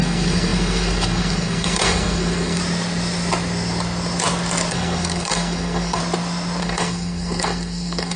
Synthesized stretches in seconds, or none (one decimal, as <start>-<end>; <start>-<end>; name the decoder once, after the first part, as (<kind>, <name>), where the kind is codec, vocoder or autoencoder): 0.0-2.6 (codec, SNAC); 4.7-6.0; 6.6-8.2